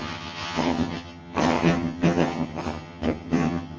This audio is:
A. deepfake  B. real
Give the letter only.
A